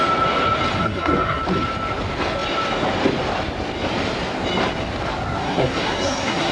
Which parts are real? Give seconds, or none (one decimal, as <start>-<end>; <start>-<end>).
0.0-0.8; 1.4-5.4